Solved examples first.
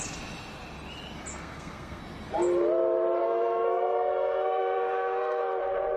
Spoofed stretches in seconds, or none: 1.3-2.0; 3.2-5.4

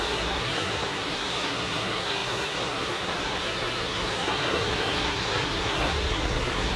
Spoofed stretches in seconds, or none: 0.0-6.8

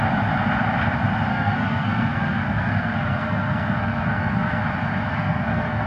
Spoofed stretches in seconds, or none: 1.3-4.6; 5.1-5.9

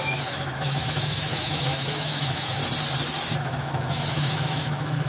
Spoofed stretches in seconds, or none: 0.0-2.6; 3.4-5.1

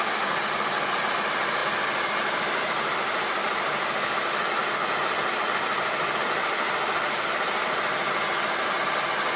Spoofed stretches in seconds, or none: none

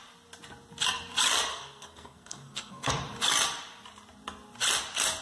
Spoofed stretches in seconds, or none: 1.5-2.9

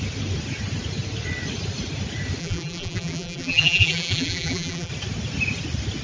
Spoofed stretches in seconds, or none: 2.4-4.9

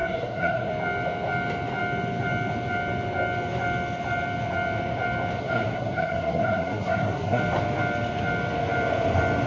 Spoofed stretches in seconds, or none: 0.0-0.7; 5.4-7.4